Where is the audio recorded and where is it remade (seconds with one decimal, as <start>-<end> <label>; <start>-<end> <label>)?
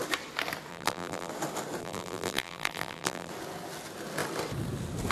0.0-0.7 recorded; 0.7-1.3 remade; 1.3-1.8 recorded; 1.8-3.3 remade; 3.3-5.1 recorded